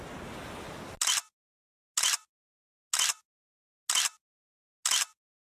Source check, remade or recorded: recorded